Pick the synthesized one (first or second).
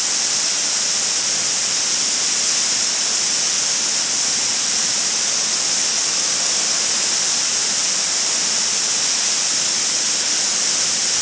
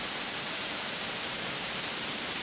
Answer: second